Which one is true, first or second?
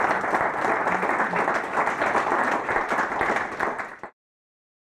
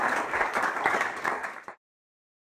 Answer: first